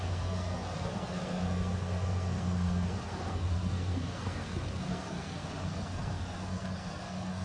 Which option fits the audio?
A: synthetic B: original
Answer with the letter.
A